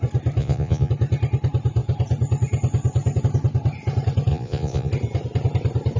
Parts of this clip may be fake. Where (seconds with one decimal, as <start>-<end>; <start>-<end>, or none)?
0.4-0.9; 4.3-4.9